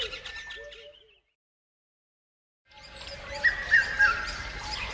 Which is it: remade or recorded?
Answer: recorded